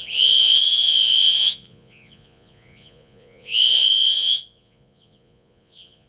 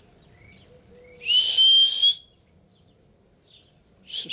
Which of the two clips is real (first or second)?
second